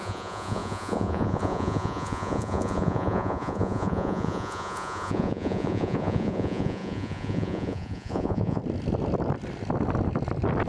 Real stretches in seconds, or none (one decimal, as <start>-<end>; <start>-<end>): 8.6-10.7